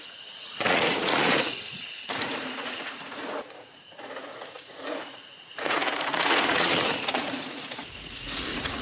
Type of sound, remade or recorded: remade